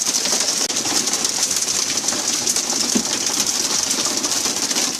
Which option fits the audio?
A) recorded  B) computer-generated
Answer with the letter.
A